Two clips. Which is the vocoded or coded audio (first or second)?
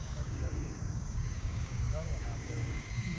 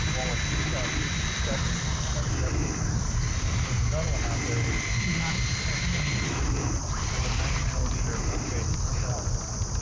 first